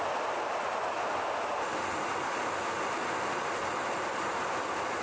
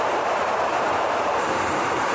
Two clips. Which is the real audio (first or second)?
first